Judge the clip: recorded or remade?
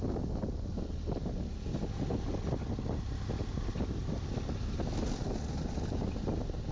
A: recorded